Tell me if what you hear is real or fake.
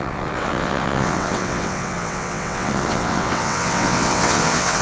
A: fake